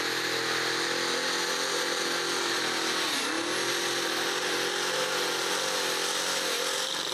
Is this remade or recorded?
recorded